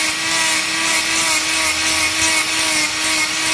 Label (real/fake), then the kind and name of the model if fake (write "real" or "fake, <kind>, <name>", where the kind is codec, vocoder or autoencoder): real